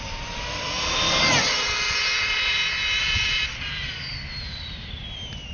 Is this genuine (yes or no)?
no